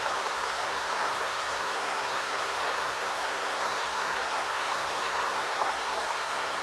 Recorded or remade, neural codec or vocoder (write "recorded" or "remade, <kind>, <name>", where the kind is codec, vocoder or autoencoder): remade, codec, SNAC